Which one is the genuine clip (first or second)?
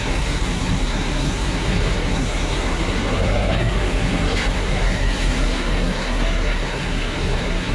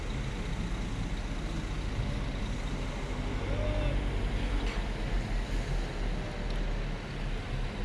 second